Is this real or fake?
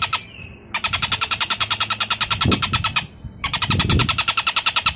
real